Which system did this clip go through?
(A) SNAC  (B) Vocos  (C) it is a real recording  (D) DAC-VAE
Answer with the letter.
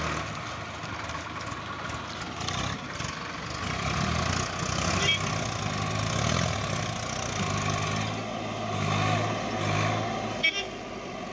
C